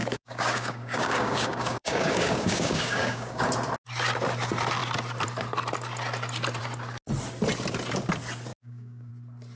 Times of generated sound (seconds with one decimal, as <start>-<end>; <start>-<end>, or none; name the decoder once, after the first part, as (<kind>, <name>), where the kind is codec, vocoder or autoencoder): 0.0-3.5 (codec, DAC); 8.5-9.1